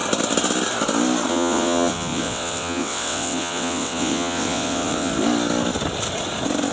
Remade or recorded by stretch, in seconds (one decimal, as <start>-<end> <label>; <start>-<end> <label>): 0.0-1.3 recorded; 1.3-5.1 remade; 5.1-6.7 recorded